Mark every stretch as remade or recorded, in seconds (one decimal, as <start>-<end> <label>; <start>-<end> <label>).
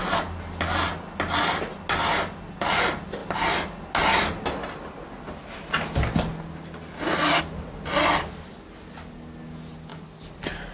0.0-10.7 recorded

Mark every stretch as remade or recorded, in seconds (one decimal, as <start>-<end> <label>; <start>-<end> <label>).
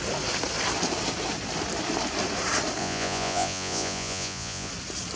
0.0-2.8 recorded; 2.8-4.7 remade; 4.7-5.2 recorded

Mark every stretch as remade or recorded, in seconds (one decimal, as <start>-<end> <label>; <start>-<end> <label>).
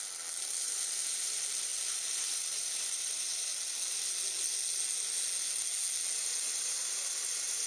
0.0-3.5 remade; 3.5-6.1 recorded; 6.1-7.7 remade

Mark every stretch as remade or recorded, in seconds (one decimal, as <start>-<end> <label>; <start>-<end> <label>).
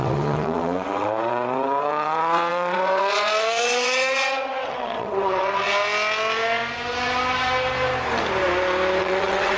0.0-5.7 remade; 5.7-9.0 recorded; 9.0-9.6 remade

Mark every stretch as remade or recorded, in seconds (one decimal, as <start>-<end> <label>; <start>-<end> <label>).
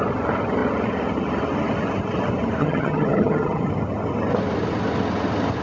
0.0-2.6 recorded; 2.6-3.7 remade; 3.7-5.6 recorded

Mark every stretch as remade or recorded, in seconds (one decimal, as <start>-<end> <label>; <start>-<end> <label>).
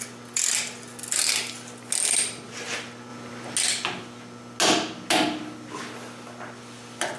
0.0-7.2 recorded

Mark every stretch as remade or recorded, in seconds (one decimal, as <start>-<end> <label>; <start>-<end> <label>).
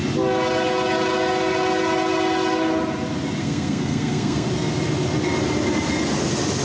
0.0-3.4 recorded; 3.4-4.5 remade; 4.5-6.6 recorded